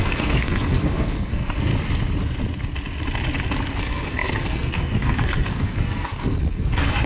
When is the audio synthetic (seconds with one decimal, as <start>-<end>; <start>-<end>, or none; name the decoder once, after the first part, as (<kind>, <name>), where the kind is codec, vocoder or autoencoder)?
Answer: 0.0-1.7 (codec, SNAC); 3.8-7.1